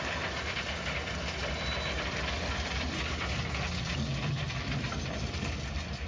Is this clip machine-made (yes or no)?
no